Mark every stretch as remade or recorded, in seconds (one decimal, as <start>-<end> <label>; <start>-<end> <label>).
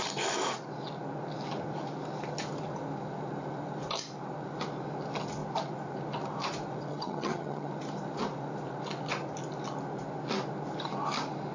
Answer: 0.0-6.9 recorded; 6.9-7.7 remade; 7.7-11.5 recorded